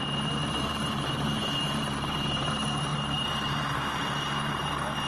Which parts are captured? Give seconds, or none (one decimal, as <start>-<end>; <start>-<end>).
0.0-0.4; 2.5-2.9; 3.8-5.1